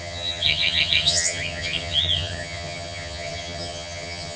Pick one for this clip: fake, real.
fake